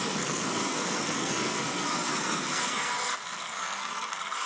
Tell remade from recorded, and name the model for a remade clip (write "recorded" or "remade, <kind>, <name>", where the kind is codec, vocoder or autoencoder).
remade, codec, SNAC